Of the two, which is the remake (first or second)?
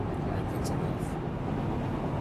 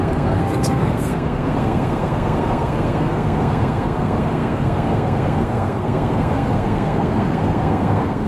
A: second